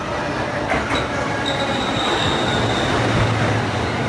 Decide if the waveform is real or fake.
real